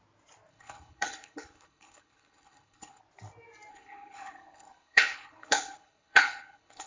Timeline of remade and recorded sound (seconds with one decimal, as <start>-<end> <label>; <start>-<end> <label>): 0.0-0.5 recorded; 0.5-3.0 remade; 3.0-3.7 recorded; 3.7-6.9 remade